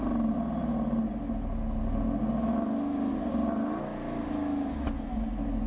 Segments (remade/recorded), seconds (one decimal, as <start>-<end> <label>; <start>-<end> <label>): 0.0-5.7 recorded